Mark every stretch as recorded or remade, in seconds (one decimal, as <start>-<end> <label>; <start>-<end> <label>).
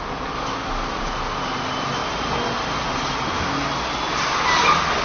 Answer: 0.0-5.0 recorded